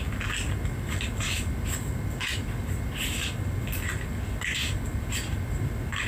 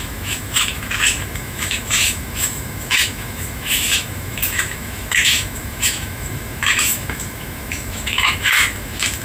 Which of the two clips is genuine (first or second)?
first